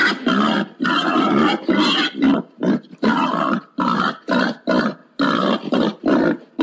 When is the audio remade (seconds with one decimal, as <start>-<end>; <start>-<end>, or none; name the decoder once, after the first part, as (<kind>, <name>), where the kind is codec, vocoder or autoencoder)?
none